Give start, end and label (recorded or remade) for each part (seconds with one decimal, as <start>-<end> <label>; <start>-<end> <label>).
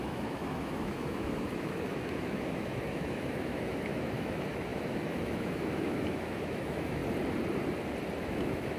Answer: 0.0-7.0 remade; 7.0-8.2 recorded; 8.2-8.8 remade